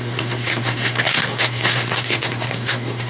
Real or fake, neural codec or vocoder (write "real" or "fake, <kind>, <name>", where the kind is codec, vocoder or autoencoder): fake, codec, SNAC